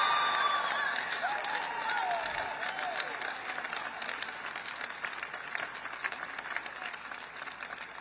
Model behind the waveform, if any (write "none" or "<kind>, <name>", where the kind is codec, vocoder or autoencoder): none